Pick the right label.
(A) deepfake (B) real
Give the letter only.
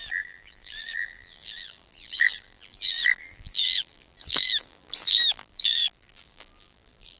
A